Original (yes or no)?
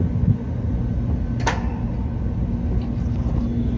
yes